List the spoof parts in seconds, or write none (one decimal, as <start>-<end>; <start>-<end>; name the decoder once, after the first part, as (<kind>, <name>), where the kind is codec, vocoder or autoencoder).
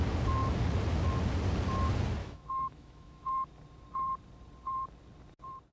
2.2-3.5 (autoencoder, DAC-VAE)